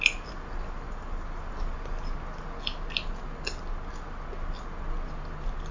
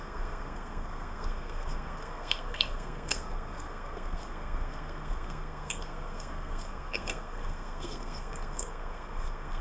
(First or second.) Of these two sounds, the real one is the first